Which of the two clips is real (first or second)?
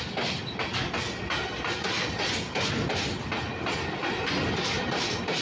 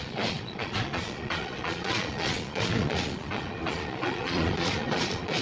first